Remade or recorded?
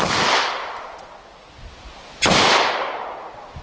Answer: recorded